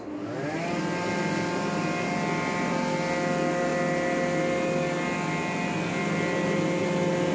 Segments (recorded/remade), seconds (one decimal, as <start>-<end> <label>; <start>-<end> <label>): 0.0-7.3 recorded